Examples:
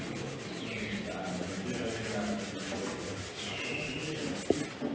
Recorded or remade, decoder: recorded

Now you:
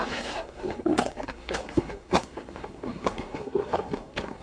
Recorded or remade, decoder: remade, codec, SNAC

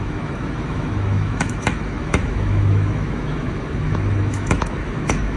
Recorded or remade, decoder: remade, autoencoder, DAC-VAE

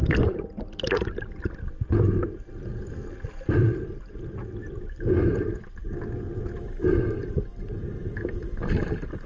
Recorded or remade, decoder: remade, vocoder, BigVGAN v2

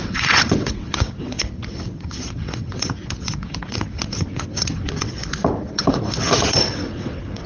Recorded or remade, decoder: remade, vocoder, WaveNeXt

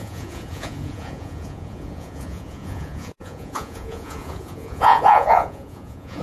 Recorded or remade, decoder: remade, vocoder, Vocos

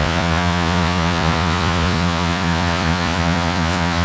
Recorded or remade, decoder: remade, vocoder, Vocos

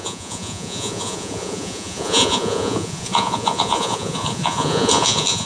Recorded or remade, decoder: remade, vocoder, Vocos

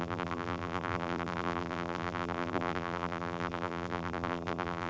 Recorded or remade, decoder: remade, vocoder, BigVGAN v2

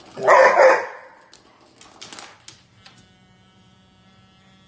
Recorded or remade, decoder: recorded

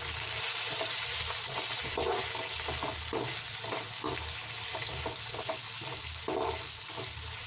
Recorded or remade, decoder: recorded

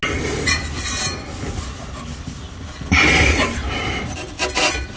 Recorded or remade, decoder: recorded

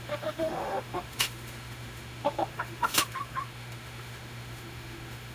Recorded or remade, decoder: remade, autoencoder, DAC-VAE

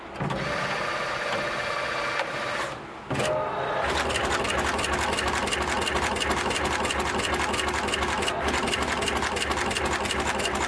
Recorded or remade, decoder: recorded